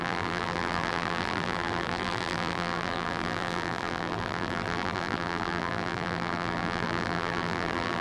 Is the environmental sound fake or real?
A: fake